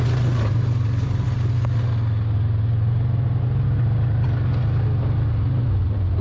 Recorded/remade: recorded